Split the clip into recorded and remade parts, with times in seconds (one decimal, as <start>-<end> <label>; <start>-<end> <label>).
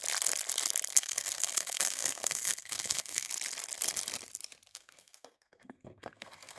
0.0-0.9 recorded; 0.9-3.3 remade; 3.3-4.7 recorded; 4.7-6.6 remade